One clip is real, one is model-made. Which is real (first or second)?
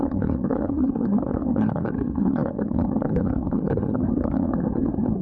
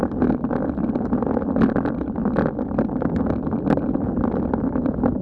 second